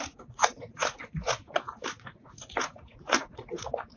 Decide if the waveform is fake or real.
fake